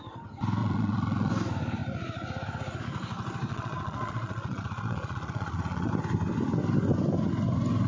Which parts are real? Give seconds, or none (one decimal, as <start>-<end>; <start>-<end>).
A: 0.0-0.6; 1.3-3.5; 5.9-7.9